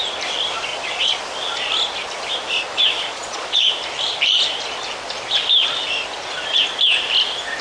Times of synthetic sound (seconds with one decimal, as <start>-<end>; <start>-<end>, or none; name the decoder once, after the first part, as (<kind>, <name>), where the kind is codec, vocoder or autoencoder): 0.7-1.2 (vocoder, Vocos); 3.1-3.7